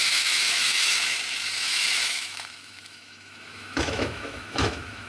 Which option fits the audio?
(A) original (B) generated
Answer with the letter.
B